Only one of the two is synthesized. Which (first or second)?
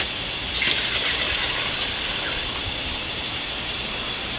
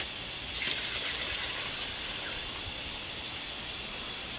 second